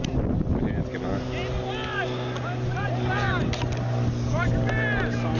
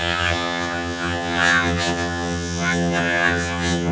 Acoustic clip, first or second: first